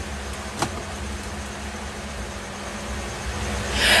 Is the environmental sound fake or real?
real